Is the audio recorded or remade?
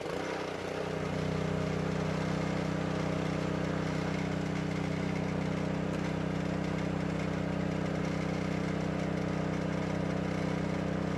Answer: recorded